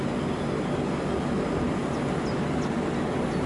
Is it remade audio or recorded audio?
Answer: recorded